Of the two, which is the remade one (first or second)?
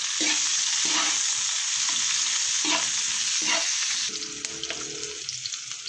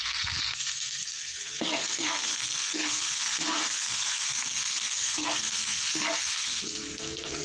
second